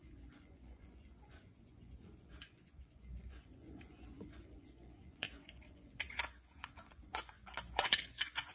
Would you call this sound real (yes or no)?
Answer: no